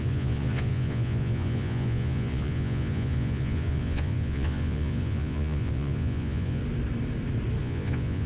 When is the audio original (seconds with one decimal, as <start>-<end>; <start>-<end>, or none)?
6.6-7.6